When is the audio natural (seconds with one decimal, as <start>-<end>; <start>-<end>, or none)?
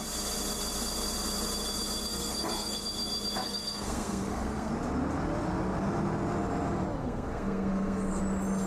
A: 0.0-2.1; 2.8-3.4; 4.7-7.0; 8.2-8.7